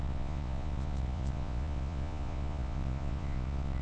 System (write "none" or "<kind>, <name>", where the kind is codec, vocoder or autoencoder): vocoder, Vocos